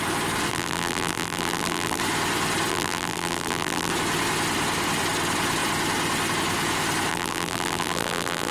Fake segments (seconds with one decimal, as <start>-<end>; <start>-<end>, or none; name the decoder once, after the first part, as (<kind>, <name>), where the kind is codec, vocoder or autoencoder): 0.5-2.0 (vocoder, BigVGAN v2); 2.7-3.9; 7.1-8.5